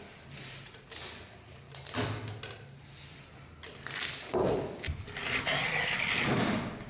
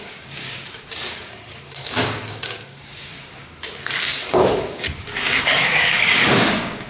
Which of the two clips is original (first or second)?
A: first